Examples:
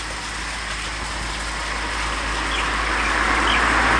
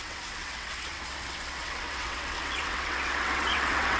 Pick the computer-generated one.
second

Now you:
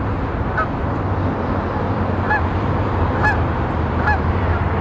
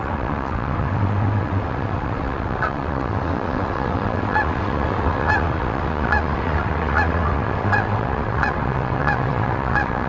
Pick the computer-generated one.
second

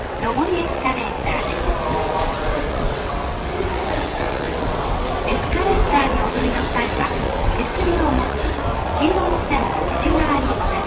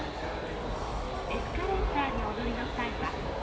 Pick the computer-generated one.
first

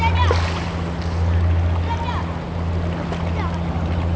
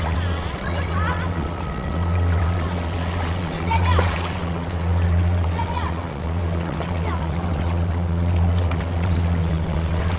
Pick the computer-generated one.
second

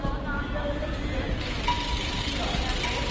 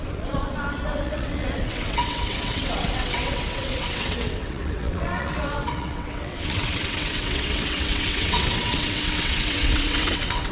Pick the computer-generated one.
second